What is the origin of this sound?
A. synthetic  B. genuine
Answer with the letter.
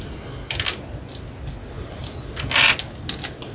B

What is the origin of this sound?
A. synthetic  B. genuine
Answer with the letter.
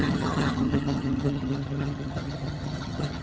A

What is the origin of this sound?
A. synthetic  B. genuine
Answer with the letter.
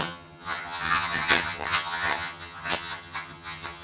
A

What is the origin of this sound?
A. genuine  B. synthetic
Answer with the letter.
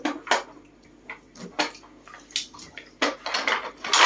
A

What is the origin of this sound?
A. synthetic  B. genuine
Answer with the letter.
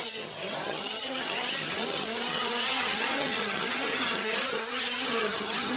A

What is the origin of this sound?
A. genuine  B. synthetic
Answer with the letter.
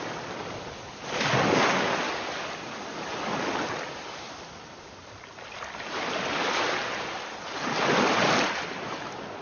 A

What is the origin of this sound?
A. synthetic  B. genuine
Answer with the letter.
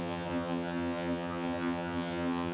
A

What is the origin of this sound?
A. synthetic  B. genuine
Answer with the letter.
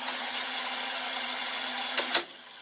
A